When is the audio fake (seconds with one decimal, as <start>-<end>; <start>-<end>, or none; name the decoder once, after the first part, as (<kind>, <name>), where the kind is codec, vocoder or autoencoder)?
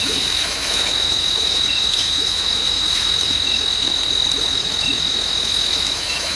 0.0-3.9 (autoencoder, DAC-VAE); 4.4-6.4